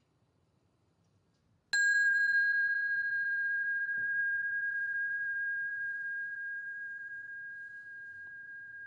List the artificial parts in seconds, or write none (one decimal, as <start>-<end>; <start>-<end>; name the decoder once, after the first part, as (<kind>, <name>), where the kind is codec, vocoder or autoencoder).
0.0-1.4 (vocoder, BigVGAN v2); 1.9-8.9